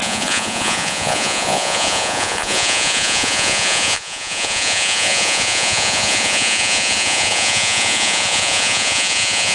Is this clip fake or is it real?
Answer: fake